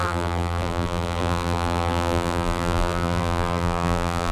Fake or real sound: fake